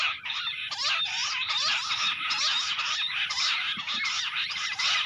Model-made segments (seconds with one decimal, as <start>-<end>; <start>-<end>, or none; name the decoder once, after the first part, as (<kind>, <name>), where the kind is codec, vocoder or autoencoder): none